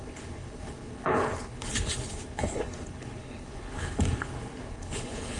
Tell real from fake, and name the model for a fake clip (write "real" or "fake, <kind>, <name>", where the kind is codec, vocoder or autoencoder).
fake, codec, HILCodec